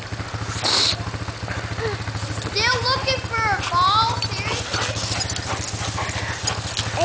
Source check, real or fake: real